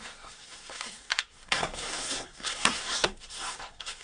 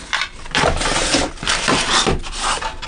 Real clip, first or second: second